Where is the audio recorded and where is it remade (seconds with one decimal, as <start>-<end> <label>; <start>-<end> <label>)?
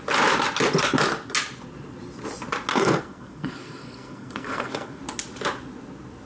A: 0.0-2.7 recorded; 2.7-5.0 remade; 5.0-6.3 recorded